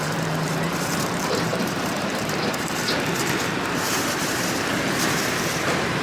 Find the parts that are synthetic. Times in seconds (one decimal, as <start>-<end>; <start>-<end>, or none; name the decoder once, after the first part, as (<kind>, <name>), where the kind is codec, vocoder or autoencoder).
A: 0.0-6.0 (vocoder, BigVGAN v2)